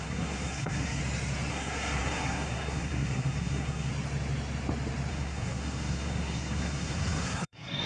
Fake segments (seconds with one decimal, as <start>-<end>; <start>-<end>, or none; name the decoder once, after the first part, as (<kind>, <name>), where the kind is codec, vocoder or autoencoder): 0.0-1.0 (codec, SNAC); 1.5-3.9; 5.1-7.9